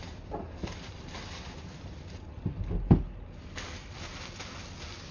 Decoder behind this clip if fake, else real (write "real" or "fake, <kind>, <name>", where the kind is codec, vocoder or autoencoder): real